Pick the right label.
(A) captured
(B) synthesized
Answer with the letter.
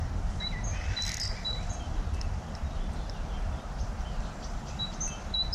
A